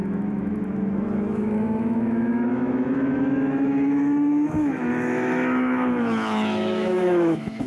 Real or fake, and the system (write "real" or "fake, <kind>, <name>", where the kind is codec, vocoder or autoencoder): fake, autoencoder, DAC-VAE